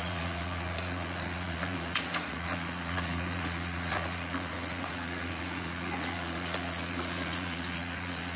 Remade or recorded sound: remade